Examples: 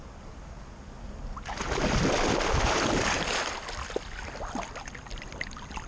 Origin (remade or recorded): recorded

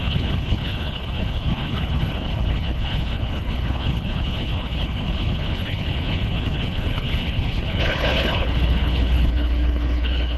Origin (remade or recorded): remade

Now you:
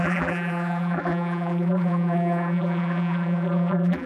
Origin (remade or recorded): remade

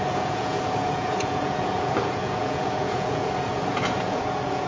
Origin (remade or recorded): remade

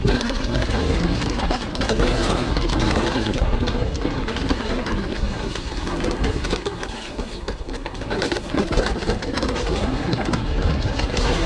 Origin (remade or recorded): remade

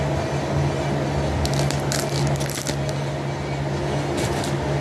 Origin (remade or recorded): recorded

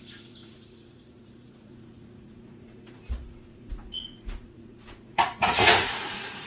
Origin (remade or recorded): remade